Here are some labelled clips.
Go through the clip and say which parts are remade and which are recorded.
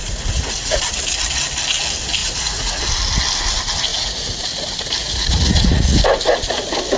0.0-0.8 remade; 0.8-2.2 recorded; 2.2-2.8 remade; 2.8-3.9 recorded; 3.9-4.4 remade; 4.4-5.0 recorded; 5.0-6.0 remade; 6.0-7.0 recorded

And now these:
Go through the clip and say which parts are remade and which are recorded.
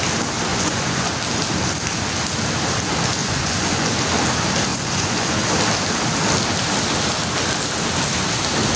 0.0-0.5 recorded; 0.5-1.1 remade; 1.1-3.2 recorded; 3.2-3.9 remade; 3.9-4.7 recorded; 4.7-5.3 remade; 5.3-8.8 recorded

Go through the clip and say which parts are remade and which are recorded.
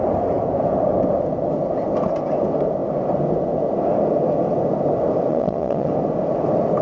0.0-5.3 recorded; 5.3-5.9 remade; 5.9-6.8 recorded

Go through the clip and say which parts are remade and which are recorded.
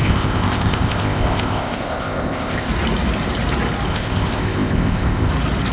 0.0-2.7 remade; 2.7-3.9 recorded; 3.9-5.3 remade; 5.3-5.7 recorded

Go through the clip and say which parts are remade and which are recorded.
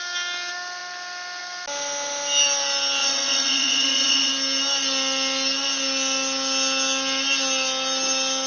0.0-3.0 recorded; 3.0-4.3 remade; 4.3-8.5 recorded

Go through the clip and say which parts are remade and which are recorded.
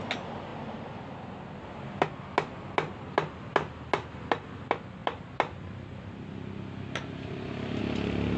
0.0-8.4 recorded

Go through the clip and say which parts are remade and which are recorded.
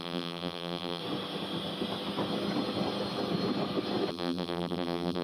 0.0-1.0 remade; 1.0-4.1 recorded; 4.1-5.2 remade